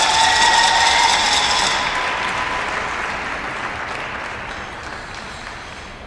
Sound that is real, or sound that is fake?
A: real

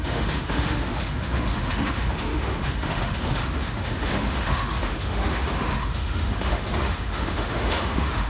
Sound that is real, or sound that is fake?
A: fake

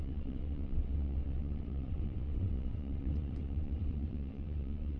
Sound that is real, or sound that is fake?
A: fake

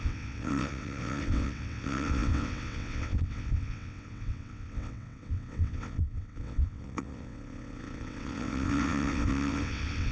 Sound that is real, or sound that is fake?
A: fake